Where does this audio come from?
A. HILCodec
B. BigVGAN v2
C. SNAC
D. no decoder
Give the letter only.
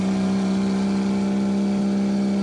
D